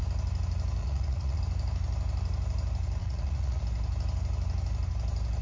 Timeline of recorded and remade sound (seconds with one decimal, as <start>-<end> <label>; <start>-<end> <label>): 0.0-0.8 recorded; 0.8-1.4 remade; 1.4-3.0 recorded; 3.0-3.6 remade; 3.6-5.4 recorded